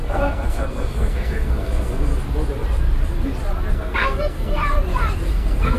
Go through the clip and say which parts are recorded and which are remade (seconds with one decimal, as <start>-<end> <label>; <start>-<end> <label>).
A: 0.0-2.1 remade; 2.1-3.7 recorded; 3.7-4.6 remade; 4.6-5.3 recorded; 5.3-5.8 remade